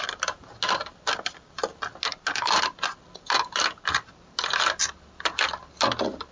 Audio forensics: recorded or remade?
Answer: recorded